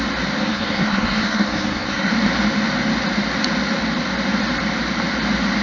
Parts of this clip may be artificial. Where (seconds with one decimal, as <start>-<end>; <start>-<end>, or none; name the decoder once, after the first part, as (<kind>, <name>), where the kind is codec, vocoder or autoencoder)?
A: 0.4-2.1 (codec, SNAC)